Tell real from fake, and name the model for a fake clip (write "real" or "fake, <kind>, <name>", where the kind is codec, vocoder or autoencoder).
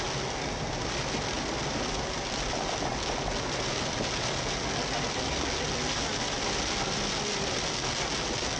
real